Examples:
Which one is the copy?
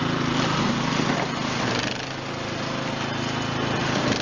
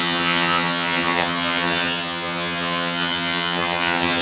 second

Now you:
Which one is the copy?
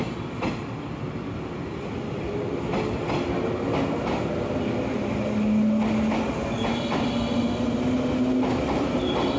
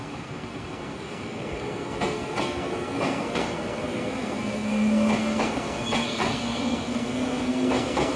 second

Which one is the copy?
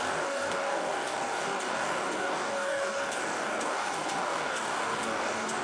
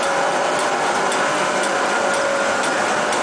first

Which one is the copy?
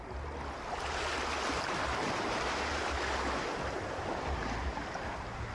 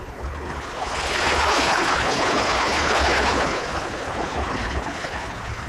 second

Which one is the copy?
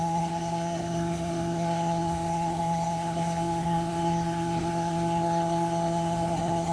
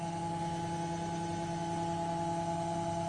first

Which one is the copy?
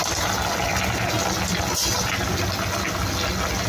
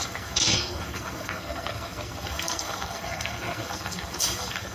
second